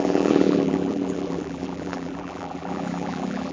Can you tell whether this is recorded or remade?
remade